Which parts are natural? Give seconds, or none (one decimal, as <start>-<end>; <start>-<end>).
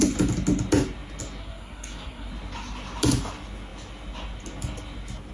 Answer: 0.0-1.4; 2.3-5.3